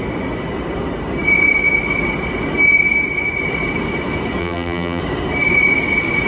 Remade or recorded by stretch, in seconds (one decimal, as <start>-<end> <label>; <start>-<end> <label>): 0.0-4.4 recorded; 4.4-5.0 remade; 5.0-6.3 recorded